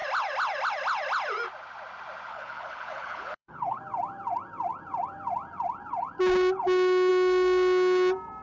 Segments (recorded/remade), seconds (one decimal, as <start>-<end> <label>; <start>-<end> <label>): 0.0-2.3 recorded; 2.3-3.8 remade; 3.8-8.4 recorded